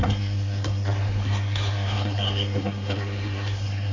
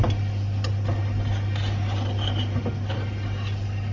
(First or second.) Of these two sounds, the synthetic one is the first